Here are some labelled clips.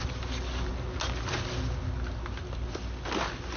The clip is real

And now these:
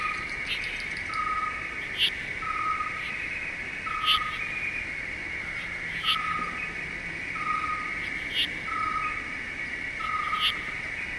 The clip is real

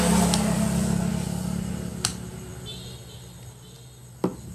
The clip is real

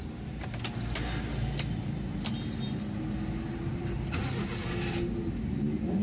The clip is real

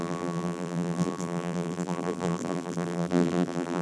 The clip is fake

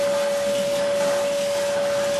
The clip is real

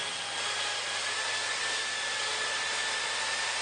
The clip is real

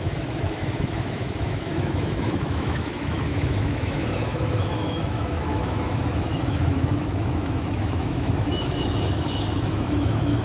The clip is fake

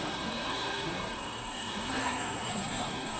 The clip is fake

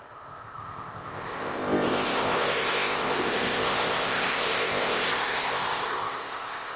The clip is fake